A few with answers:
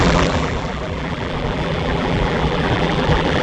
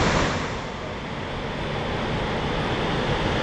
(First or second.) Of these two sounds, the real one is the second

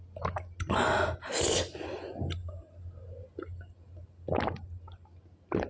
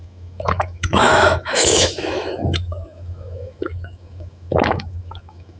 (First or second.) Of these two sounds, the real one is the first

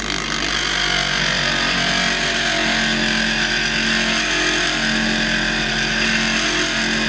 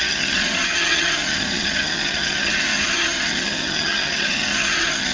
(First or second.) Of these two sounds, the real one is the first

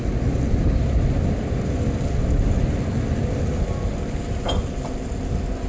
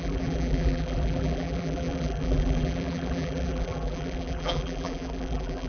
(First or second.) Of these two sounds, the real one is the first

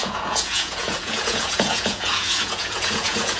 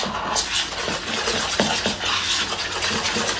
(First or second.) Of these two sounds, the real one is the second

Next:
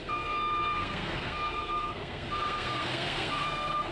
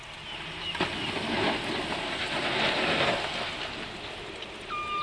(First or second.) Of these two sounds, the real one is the second